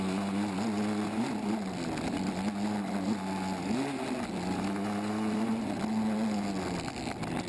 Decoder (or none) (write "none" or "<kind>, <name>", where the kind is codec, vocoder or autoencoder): none